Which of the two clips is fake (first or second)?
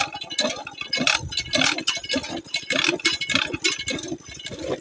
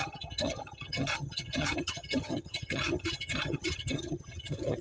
second